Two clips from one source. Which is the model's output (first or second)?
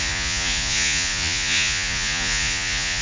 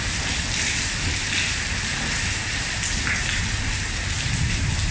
first